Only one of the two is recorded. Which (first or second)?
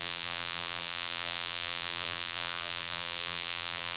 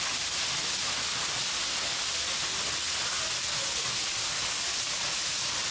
second